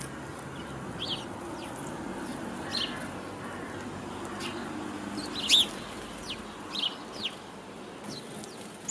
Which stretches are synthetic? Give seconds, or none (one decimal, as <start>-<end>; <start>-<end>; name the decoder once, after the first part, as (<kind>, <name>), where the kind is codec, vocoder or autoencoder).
none